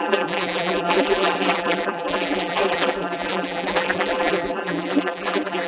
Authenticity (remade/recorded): remade